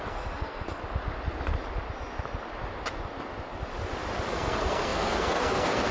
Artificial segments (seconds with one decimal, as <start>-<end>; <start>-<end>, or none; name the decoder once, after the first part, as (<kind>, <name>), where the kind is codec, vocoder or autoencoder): 0.0-0.8 (codec, SNAC); 4.3-5.9

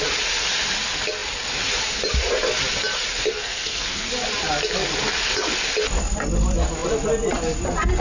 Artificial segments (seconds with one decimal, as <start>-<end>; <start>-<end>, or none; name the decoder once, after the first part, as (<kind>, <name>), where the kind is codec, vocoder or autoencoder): 3.3-4.1 (codec, SNAC)

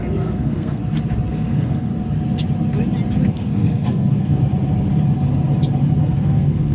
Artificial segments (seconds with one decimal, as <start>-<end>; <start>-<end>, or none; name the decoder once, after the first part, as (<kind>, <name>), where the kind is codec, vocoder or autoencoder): 0.0-0.8 (codec, SNAC); 1.3-1.9; 3.3-4.4; 6.0-6.7

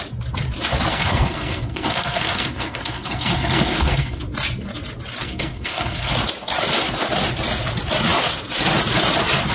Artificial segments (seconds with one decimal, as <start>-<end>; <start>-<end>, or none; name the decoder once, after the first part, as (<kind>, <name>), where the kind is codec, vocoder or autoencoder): 0.9-4.2 (codec, SNAC); 5.2-6.1

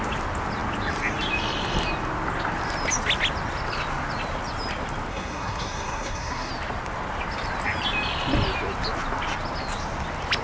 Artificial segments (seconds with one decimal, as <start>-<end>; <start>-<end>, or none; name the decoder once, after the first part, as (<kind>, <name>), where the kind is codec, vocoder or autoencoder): 5.1-6.5 (codec, SNAC)

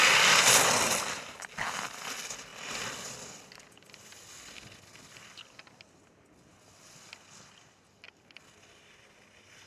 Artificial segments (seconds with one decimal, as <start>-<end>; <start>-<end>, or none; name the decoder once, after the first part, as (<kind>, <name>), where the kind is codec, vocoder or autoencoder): none

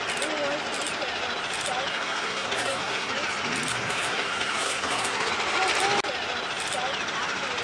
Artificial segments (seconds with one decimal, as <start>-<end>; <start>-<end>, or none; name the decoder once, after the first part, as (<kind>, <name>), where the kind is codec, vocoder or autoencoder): 1.9-3.1 (codec, SNAC); 3.7-5.3